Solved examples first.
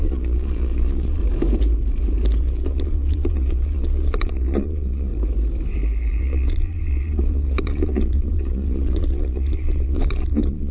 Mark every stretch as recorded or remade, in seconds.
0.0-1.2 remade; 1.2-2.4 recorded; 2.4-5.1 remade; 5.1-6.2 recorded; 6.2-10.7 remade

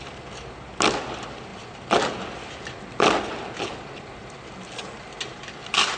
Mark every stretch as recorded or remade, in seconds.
0.0-6.0 recorded

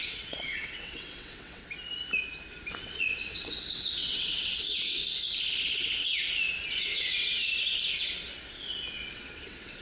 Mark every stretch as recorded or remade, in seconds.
0.0-1.6 remade; 1.6-2.7 recorded; 2.7-5.0 remade; 5.0-6.8 recorded; 6.8-7.5 remade; 7.5-9.1 recorded; 9.1-9.8 remade

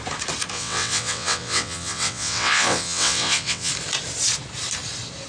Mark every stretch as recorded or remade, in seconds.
0.0-0.5 recorded; 0.5-3.7 remade; 3.7-5.3 recorded

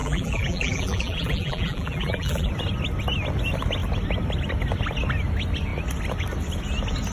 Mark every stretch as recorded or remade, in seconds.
0.0-2.5 remade; 2.5-7.1 recorded